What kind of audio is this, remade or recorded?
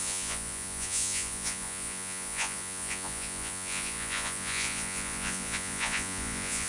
remade